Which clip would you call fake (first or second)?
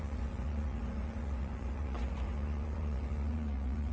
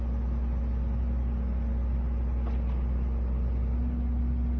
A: first